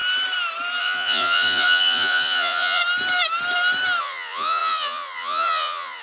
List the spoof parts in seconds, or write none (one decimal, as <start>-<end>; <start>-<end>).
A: 0.8-2.8; 4.0-6.0